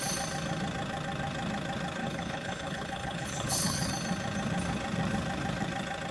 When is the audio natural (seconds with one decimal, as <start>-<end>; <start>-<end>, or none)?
0.0-2.0; 3.9-6.1